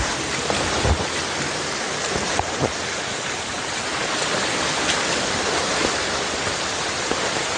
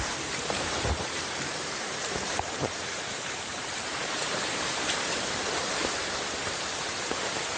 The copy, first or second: second